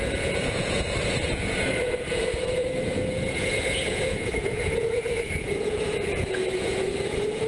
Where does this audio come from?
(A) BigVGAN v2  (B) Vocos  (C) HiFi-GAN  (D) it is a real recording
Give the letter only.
B